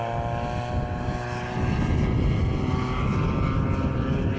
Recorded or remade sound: recorded